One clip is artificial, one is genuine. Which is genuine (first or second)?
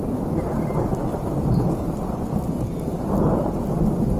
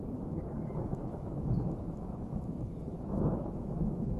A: first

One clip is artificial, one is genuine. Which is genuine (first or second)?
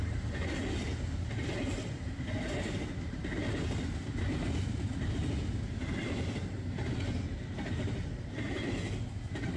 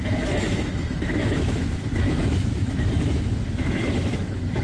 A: first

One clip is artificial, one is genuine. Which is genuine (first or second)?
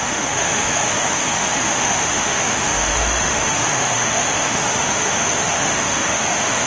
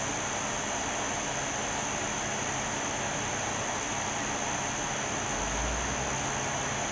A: second